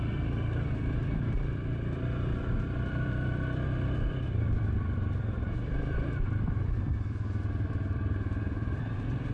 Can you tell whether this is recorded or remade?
remade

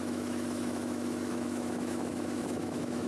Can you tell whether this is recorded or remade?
remade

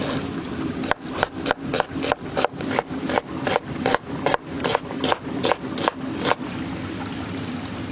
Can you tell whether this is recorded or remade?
recorded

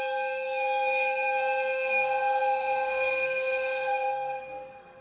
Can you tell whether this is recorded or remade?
remade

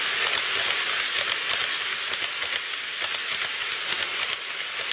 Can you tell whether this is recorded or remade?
recorded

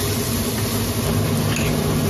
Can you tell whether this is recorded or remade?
recorded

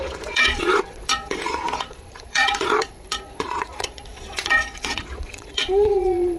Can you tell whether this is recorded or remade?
remade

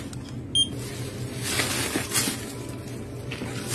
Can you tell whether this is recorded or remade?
recorded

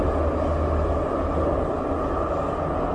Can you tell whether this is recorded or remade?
recorded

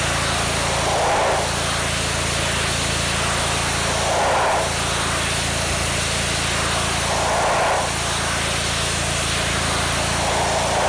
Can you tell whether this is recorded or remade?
recorded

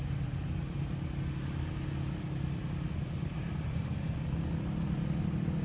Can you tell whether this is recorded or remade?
recorded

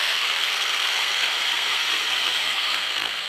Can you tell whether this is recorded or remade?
remade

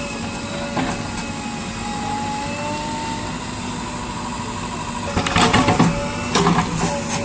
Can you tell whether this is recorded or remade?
recorded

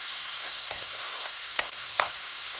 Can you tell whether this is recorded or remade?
remade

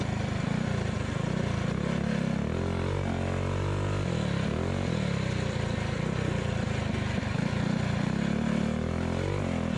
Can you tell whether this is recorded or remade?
recorded